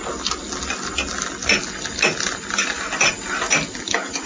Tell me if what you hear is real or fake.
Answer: real